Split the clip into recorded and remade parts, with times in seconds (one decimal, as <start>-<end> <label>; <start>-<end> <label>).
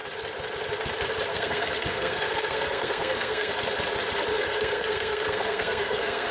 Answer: 0.0-1.3 recorded; 1.3-3.5 remade; 3.5-4.3 recorded; 4.3-6.3 remade